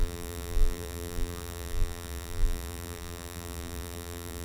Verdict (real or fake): fake